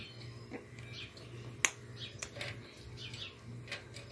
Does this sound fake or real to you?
real